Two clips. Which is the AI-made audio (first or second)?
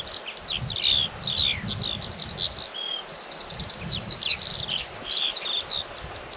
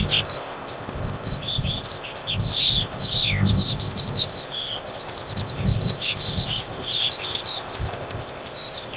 second